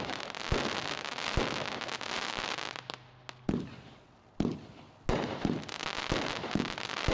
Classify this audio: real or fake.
real